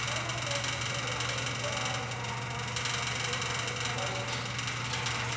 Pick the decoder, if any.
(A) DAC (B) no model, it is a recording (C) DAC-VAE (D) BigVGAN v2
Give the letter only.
B